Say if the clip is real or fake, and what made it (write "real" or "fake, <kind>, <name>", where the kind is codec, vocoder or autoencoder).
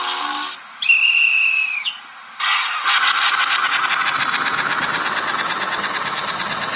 real